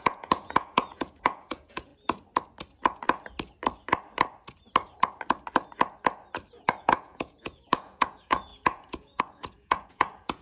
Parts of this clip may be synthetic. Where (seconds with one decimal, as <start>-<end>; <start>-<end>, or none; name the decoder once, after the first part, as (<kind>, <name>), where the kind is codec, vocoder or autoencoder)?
0.0-1.9 (vocoder, Vocos); 6.8-10.4